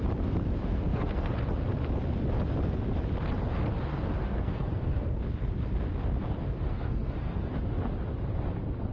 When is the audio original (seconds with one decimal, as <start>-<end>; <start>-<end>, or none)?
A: 0.0-0.7; 1.3-3.9; 5.2-6.6; 7.5-8.9